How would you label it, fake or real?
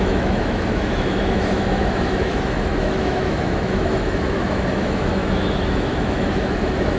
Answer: fake